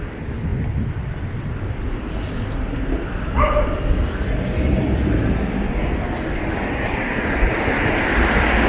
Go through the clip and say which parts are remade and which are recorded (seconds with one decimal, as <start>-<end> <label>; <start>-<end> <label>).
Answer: 0.0-8.7 remade